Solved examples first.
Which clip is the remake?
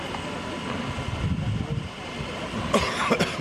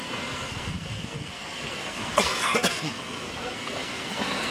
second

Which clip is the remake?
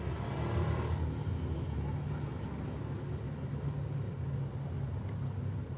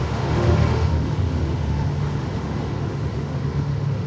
second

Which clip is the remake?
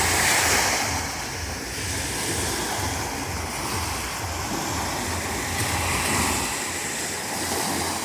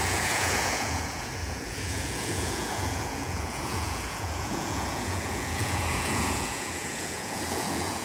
second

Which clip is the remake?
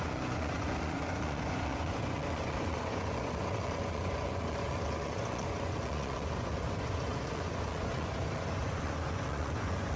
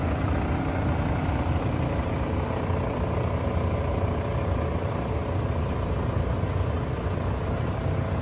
first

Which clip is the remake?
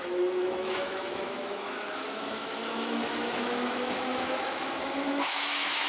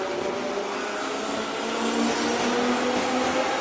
first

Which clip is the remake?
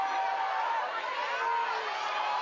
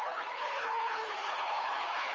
second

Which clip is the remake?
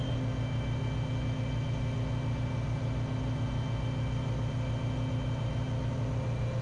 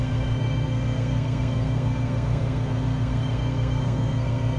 second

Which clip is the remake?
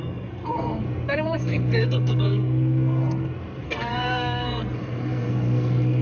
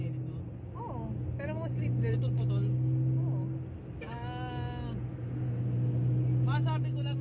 first